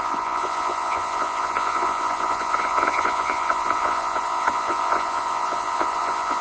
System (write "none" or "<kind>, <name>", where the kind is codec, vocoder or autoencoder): vocoder, Vocos